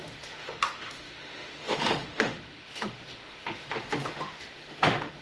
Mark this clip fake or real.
fake